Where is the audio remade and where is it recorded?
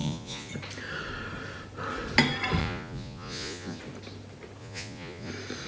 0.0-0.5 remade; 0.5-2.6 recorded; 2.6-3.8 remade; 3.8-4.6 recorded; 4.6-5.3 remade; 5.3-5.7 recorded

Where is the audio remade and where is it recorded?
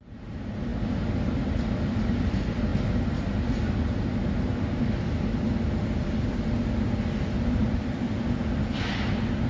0.0-9.5 recorded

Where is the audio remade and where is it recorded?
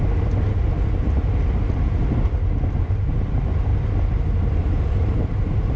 0.0-5.8 recorded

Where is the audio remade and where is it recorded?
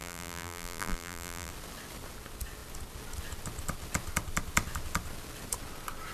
0.0-1.5 remade; 1.5-6.1 recorded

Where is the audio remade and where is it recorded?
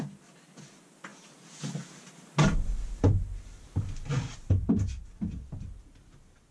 0.0-6.5 recorded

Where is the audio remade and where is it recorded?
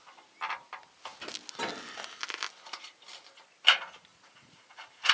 0.0-4.1 recorded; 4.1-5.1 remade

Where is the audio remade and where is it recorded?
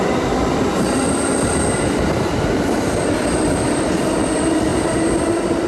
0.0-5.7 recorded